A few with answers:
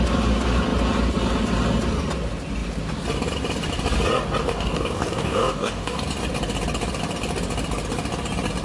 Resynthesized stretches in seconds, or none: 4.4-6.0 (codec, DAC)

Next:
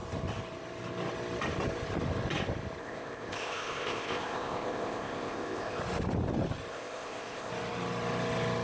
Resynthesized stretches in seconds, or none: 2.8-5.8 (codec, ZipCodec); 6.7-7.5

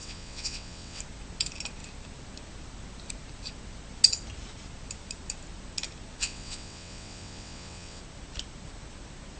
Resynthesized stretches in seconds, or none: 0.0-1.0 (vocoder, WaveNeXt); 6.2-8.0